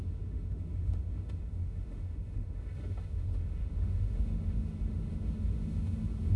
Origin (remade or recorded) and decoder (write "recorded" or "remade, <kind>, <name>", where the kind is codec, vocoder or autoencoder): remade, autoencoder, DAC-VAE